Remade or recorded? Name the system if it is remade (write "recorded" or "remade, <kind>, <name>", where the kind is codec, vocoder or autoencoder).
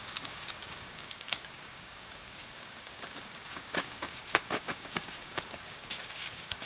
remade, codec, DAC